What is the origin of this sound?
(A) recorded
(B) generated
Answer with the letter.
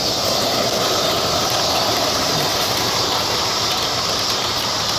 B